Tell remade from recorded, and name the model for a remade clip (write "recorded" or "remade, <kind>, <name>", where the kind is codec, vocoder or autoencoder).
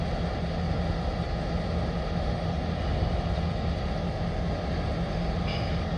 recorded